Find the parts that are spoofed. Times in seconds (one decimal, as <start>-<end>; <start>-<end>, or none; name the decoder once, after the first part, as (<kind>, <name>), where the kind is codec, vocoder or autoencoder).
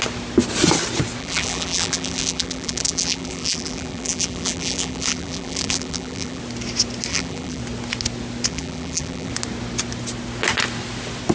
1.2-6.4 (vocoder, BigVGAN v2); 7.1-7.6; 8.5-9.3